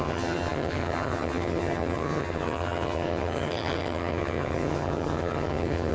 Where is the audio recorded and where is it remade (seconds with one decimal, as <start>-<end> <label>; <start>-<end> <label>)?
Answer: 0.0-5.9 remade